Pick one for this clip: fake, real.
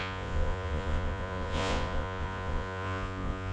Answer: fake